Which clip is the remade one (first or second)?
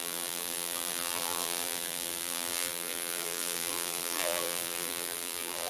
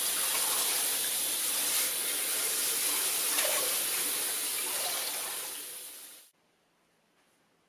first